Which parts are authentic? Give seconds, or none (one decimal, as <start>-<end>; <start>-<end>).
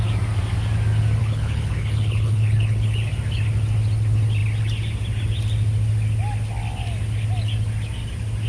0.0-1.2; 3.1-8.5